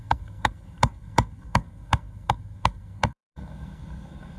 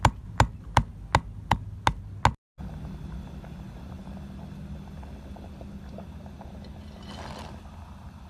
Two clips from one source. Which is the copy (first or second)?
first